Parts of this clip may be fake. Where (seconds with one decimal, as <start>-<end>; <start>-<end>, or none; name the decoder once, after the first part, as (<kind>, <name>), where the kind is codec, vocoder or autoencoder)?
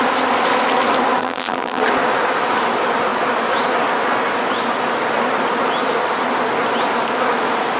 1.2-1.8 (vocoder, BigVGAN v2)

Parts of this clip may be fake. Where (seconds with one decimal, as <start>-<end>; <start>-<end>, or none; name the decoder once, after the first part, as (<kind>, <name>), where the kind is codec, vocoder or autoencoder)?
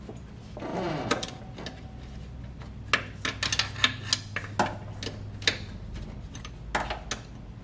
0.7-1.4 (vocoder, BigVGAN v2)